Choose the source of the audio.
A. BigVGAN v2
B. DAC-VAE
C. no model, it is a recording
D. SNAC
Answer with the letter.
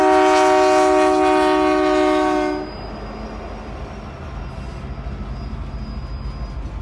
C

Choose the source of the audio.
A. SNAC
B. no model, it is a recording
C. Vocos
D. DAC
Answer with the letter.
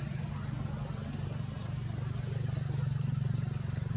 B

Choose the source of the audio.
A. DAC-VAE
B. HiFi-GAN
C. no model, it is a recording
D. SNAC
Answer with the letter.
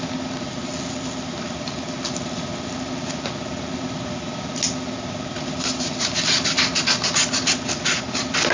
C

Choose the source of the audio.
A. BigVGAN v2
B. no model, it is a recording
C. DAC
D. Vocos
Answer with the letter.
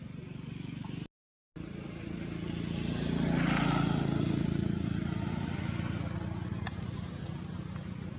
B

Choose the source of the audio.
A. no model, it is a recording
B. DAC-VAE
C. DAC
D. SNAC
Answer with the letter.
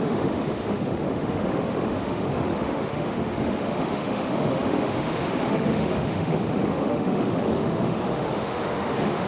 B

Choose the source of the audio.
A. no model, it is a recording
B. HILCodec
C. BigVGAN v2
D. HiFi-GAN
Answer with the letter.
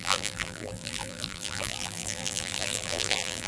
C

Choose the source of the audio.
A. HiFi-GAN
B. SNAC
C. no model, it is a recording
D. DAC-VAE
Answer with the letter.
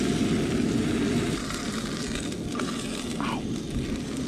C